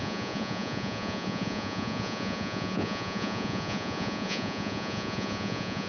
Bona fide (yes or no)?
no